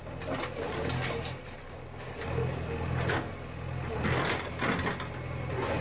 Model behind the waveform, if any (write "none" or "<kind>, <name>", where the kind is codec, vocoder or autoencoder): none